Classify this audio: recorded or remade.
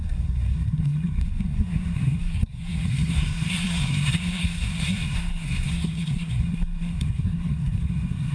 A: remade